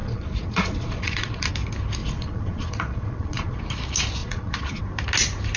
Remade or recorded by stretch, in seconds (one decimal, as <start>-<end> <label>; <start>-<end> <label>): 0.0-1.5 remade; 1.5-2.0 recorded; 2.0-3.6 remade; 3.6-4.2 recorded; 4.2-4.8 remade; 4.8-5.6 recorded